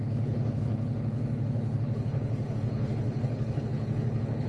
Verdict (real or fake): fake